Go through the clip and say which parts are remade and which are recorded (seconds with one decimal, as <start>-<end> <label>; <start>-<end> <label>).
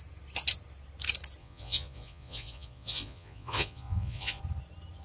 0.0-1.4 recorded; 1.4-4.4 remade; 4.4-5.0 recorded